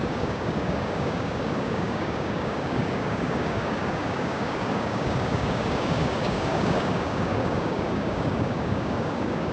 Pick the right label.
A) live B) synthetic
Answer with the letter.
B